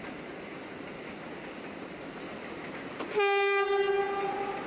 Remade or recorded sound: recorded